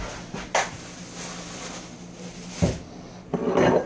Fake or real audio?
real